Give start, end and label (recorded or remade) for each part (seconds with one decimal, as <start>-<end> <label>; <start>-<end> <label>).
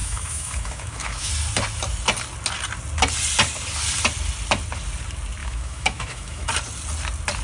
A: 0.0-1.3 remade; 1.3-5.4 recorded; 5.4-6.5 remade; 6.5-7.4 recorded